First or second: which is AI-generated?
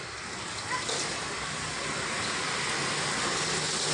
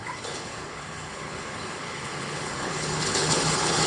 second